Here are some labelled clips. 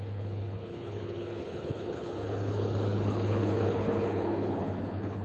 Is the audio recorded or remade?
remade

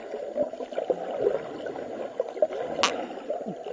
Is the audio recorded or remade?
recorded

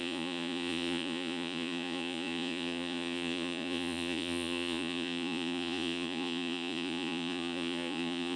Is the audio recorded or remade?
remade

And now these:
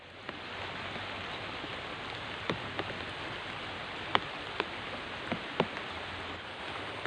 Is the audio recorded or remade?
recorded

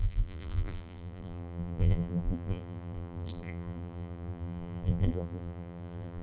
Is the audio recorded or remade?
remade